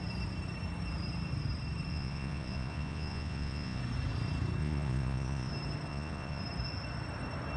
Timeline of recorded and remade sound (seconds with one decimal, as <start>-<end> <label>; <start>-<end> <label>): 0.0-1.9 recorded; 1.9-3.8 remade; 3.8-4.6 recorded; 4.6-5.5 remade; 5.5-5.9 recorded; 5.9-6.4 remade; 6.4-7.6 recorded